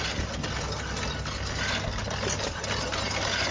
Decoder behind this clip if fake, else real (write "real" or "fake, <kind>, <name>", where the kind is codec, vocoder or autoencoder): real